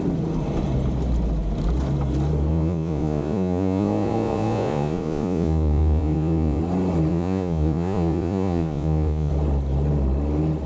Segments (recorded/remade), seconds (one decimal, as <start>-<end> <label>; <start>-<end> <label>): 0.0-2.5 recorded; 2.5-6.6 remade; 6.6-7.1 recorded; 7.1-9.3 remade; 9.3-10.7 recorded